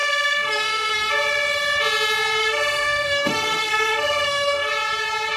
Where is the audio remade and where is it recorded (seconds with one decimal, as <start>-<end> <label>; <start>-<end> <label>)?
0.0-1.1 remade; 1.1-2.4 recorded; 2.4-4.7 remade; 4.7-5.4 recorded